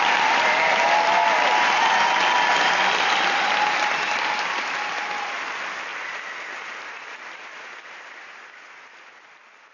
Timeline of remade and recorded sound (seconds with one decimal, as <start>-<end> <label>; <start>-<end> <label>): 0.0-9.7 recorded